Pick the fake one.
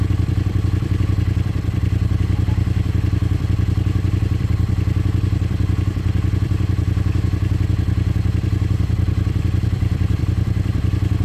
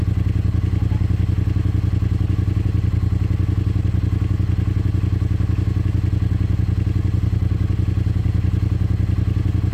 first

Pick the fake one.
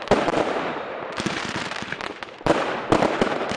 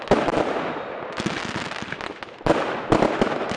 first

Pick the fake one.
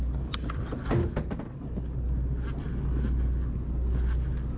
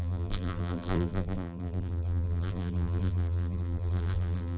second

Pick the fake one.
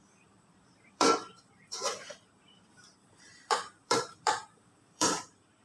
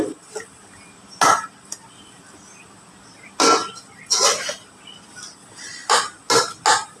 first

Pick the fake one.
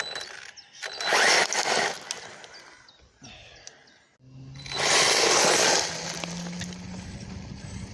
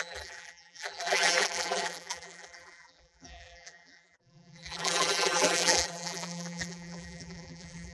second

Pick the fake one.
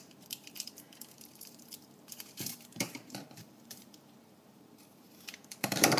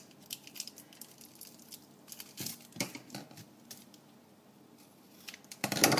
first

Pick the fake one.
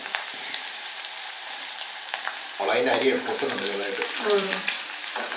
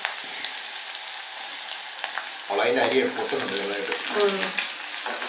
first